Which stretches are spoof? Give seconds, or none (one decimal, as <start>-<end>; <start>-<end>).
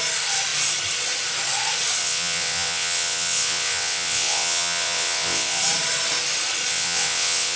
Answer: 2.0-5.6; 6.7-7.6